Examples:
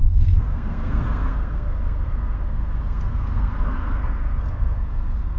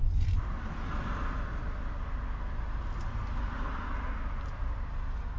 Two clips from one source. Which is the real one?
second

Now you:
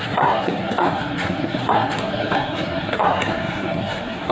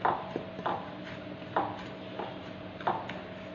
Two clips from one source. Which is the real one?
second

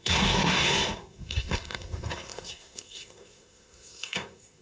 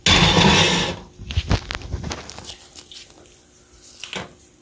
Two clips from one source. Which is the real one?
second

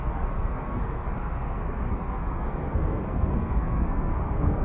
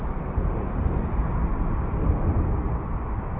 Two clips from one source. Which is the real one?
second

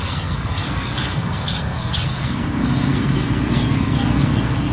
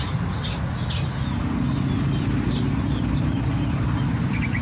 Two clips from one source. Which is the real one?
second